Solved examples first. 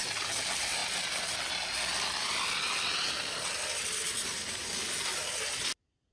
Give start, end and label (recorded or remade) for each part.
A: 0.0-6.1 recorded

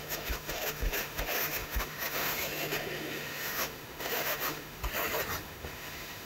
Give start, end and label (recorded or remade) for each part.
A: 0.0-4.8 remade; 4.8-5.4 recorded; 5.4-6.3 remade